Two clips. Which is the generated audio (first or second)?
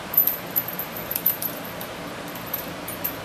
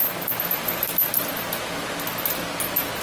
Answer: first